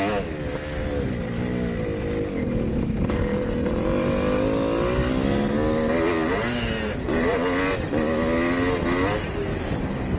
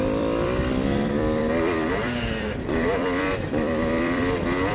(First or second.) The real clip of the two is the first